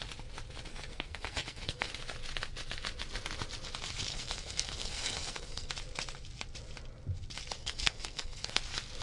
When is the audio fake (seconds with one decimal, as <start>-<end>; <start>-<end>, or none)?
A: 0.7-1.9; 4.1-5.7; 7.6-8.6

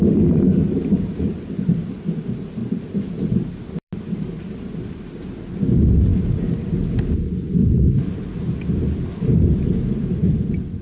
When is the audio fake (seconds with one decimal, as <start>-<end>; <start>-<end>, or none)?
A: 2.6-3.5; 7.6-8.5